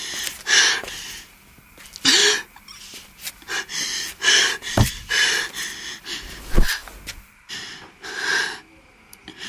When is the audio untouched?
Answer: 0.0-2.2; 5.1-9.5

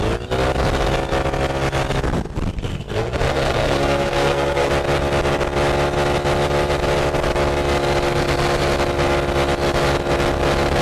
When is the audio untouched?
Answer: 0.0-2.7; 4.7-10.8

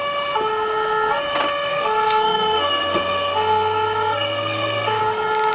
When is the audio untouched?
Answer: 0.0-1.7; 5.0-5.5

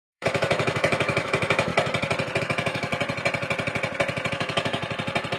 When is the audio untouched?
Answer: 1.7-2.4; 2.9-4.3; 4.8-5.4